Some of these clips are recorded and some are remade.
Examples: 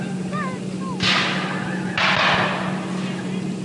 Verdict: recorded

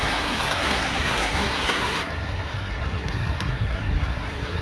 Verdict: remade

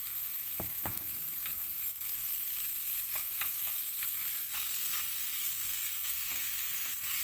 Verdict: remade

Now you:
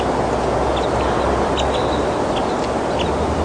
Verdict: recorded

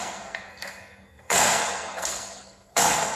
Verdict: remade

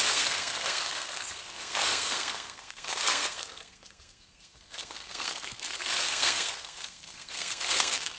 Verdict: remade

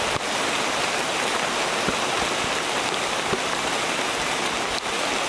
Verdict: recorded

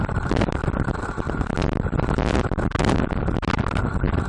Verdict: recorded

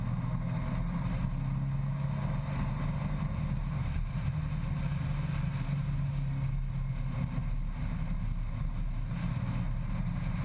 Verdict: recorded